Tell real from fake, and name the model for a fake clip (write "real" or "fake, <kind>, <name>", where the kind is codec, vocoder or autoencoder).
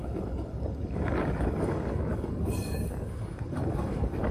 fake, codec, DAC